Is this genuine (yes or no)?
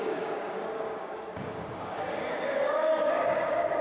no